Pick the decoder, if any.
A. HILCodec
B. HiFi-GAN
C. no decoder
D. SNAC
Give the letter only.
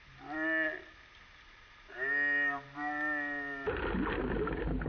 C